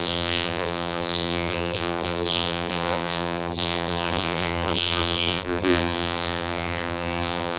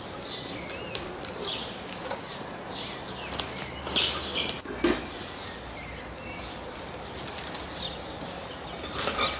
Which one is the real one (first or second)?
second